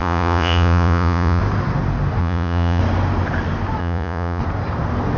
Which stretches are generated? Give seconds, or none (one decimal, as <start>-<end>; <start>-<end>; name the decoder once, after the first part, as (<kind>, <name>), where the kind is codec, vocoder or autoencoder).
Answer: 0.0-1.4 (vocoder, Vocos); 2.2-2.8; 3.8-4.4